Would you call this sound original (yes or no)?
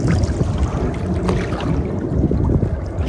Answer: yes